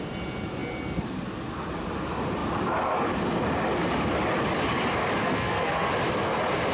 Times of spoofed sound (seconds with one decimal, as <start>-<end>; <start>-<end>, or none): 5.2-5.9